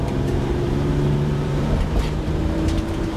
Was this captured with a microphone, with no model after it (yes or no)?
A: no